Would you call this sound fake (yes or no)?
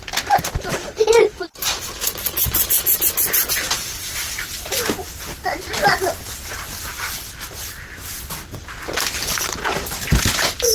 no